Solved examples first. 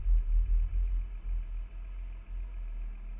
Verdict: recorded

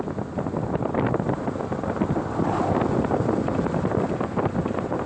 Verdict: recorded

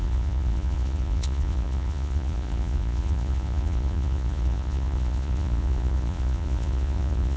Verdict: remade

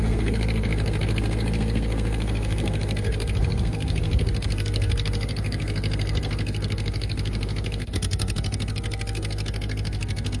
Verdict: remade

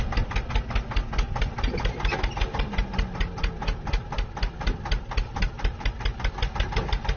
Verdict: recorded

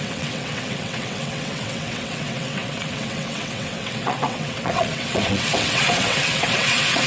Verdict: remade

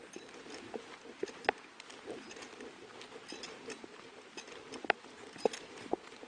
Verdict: recorded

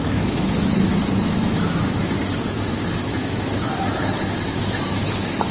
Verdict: remade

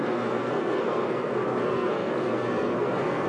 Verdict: remade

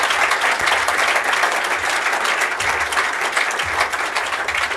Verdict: recorded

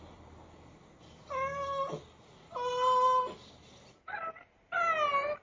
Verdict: recorded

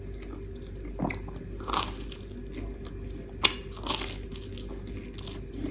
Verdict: recorded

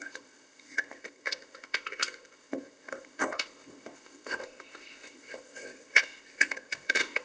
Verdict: remade